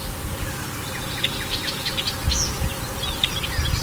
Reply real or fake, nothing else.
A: real